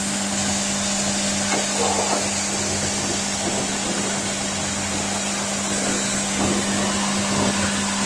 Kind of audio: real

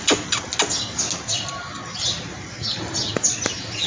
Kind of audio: real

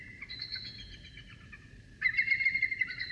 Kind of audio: fake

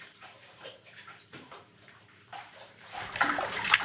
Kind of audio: fake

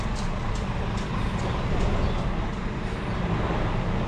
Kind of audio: real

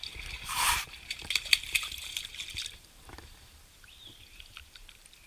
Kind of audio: fake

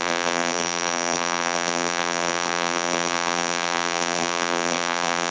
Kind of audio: fake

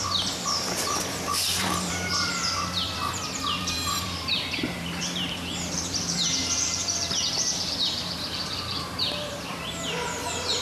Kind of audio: fake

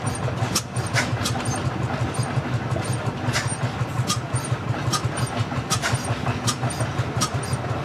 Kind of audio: real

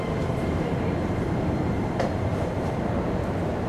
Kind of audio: fake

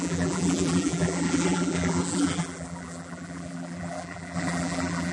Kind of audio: fake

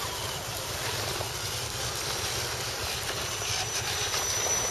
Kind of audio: fake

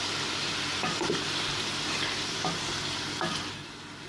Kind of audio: real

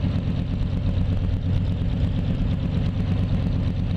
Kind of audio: real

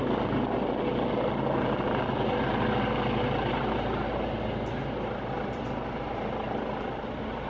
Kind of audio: real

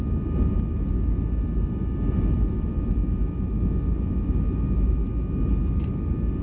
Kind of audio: real